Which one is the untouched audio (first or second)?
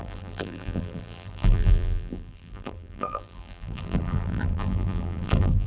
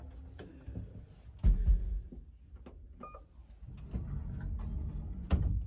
second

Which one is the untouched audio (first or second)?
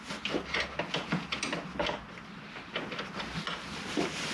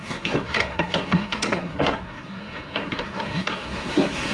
first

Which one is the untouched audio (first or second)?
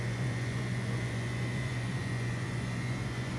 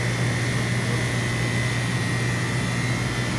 second